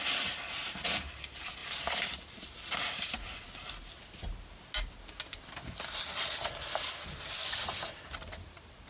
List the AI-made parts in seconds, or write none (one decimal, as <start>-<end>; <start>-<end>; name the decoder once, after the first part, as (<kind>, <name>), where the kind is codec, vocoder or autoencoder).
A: none